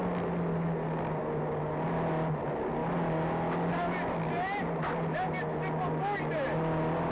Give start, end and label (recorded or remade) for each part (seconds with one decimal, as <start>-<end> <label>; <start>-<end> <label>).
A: 0.0-7.1 recorded